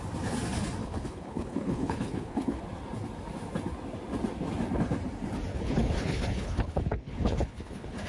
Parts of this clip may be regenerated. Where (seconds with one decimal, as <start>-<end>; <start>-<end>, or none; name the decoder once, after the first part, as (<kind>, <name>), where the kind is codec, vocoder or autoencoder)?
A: 0.8-2.6 (codec, HILCodec); 5.5-8.1